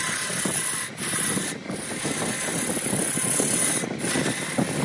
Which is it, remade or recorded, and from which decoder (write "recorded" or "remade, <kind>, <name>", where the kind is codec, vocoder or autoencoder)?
recorded